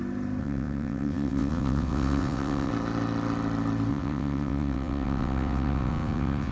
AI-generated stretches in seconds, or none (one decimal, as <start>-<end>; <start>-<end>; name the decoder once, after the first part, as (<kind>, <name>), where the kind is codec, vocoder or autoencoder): 0.4-2.7 (vocoder, WaveNeXt); 3.9-6.5